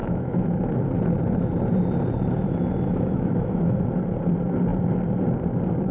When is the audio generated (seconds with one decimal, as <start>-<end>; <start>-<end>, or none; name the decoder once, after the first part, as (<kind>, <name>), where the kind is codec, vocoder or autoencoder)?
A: 0.0-0.6 (autoencoder, DAC-VAE); 2.9-3.7